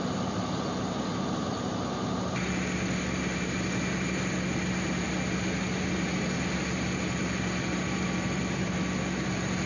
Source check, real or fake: real